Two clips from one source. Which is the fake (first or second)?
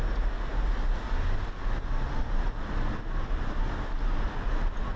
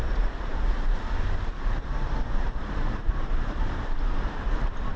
second